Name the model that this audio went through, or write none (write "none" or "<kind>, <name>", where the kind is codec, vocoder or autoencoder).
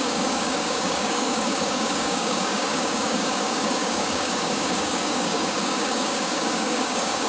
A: codec, DAC